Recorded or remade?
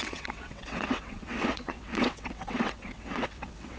remade